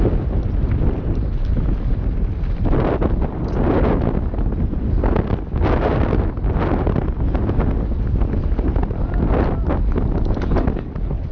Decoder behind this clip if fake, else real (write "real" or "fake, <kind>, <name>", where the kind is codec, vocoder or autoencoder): real